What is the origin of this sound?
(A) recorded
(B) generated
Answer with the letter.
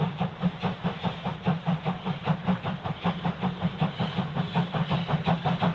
A